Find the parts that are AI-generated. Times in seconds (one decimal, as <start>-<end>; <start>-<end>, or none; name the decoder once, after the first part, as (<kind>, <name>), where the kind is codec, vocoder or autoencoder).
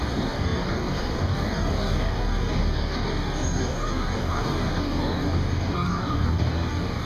0.0-7.1 (codec, DAC)